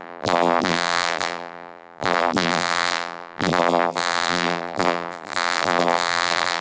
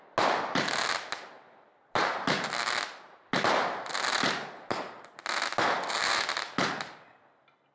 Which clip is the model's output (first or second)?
first